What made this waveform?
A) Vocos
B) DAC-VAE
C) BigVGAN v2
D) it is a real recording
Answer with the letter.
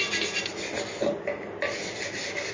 D